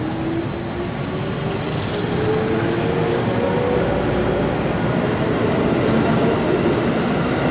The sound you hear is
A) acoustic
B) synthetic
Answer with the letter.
A